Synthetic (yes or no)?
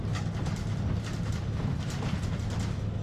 no